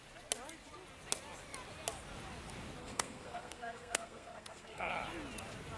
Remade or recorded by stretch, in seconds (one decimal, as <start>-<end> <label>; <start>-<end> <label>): 0.0-2.8 recorded; 2.8-4.9 remade; 4.9-5.8 recorded